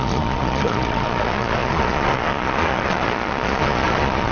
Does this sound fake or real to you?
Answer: fake